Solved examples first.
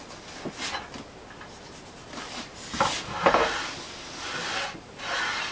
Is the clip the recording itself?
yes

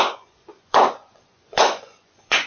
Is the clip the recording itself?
no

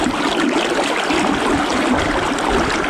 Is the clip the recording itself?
yes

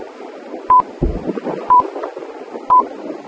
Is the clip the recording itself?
no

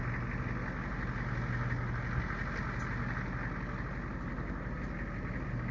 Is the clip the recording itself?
yes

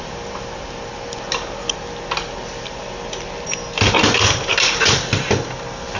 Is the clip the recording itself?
yes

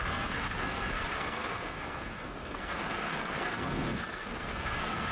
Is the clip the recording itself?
no